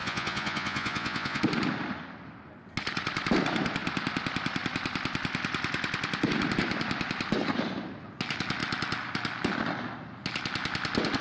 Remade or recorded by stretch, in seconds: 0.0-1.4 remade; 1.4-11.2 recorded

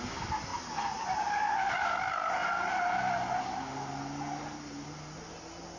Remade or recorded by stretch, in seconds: 0.0-5.8 recorded

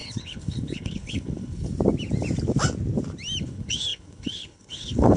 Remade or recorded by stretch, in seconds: 0.0-1.7 remade; 1.7-3.4 recorded; 3.4-5.2 remade

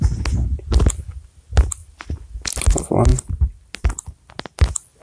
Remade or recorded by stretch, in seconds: 0.0-5.0 recorded

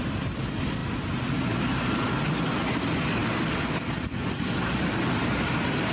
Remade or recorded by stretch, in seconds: 0.0-5.9 recorded

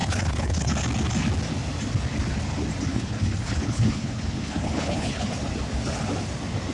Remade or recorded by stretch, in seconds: 0.0-0.7 remade; 0.7-2.9 recorded; 2.9-5.3 remade; 5.3-6.7 recorded